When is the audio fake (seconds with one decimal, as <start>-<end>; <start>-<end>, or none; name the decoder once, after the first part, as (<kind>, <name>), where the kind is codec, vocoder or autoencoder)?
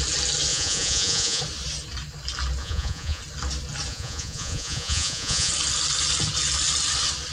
0.5-1.4 (vocoder, Vocos); 2.6-3.2; 3.9-5.5